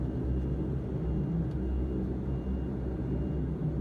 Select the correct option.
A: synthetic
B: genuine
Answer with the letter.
B